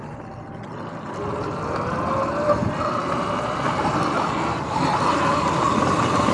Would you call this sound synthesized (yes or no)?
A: no